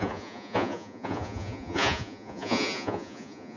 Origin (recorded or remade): remade